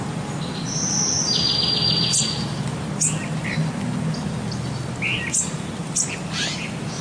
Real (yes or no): yes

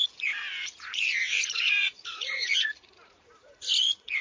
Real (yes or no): no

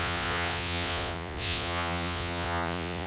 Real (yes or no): no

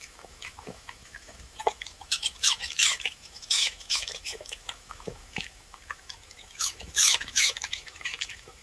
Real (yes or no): no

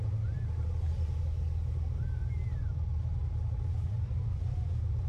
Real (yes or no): yes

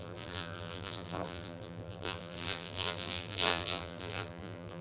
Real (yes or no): no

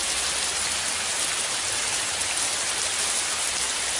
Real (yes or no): yes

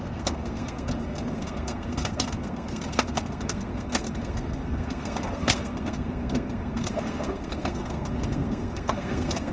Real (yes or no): no